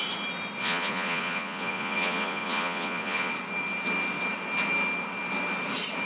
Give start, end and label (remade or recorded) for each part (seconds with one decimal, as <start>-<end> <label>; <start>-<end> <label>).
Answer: 0.0-0.6 recorded; 0.6-3.3 remade; 3.3-6.1 recorded